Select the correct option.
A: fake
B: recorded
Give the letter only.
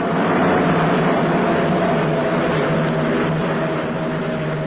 B